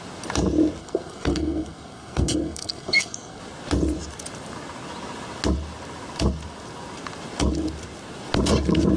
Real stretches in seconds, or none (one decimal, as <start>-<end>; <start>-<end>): 0.0-0.8; 3.4-9.0